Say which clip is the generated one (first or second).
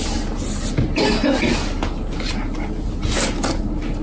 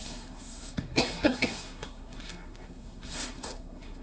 second